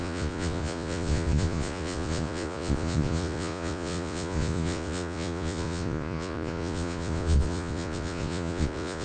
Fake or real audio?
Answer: fake